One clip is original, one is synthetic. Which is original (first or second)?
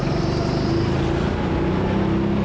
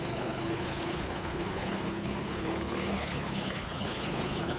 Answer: first